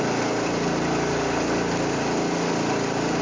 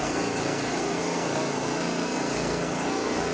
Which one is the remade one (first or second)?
second